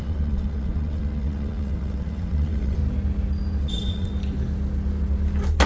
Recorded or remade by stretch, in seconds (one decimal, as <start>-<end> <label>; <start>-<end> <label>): 0.0-2.8 remade; 2.8-3.6 recorded; 3.6-4.1 remade; 4.1-5.7 recorded